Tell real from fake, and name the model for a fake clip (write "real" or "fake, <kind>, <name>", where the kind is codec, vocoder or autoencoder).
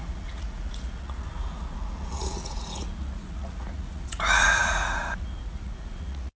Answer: fake, vocoder, Vocos